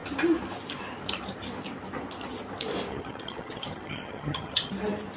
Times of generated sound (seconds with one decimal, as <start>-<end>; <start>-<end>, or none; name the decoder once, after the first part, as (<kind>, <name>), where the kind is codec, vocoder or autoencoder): 2.9-4.7 (vocoder, HiFi-GAN)